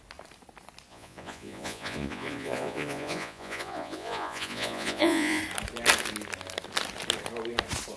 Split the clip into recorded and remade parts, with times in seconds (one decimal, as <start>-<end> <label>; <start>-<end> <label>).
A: 0.0-0.9 recorded; 0.9-5.4 remade; 5.4-8.0 recorded